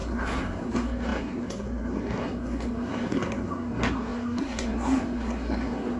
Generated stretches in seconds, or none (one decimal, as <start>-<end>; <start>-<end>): 0.0-6.0

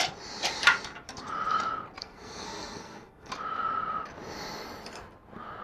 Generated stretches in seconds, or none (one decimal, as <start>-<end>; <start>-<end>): 2.0-3.3

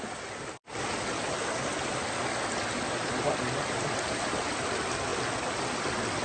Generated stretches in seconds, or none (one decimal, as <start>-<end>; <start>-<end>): none

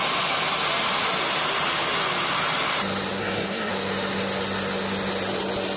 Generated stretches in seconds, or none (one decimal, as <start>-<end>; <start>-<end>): 3.2-3.7

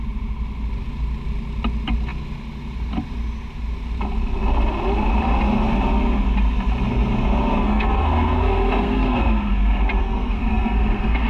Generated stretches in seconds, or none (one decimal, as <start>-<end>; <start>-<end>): 7.5-9.5; 10.0-11.3

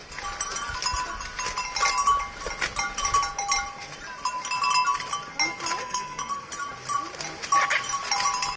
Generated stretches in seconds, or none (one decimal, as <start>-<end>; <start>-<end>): 5.8-6.5